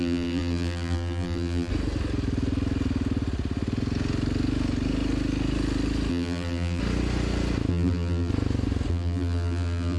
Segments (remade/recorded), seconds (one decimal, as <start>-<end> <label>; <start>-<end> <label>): 0.0-1.7 remade; 1.7-6.1 recorded; 6.1-6.8 remade; 6.8-7.7 recorded; 7.7-8.3 remade; 8.3-8.9 recorded; 8.9-10.0 remade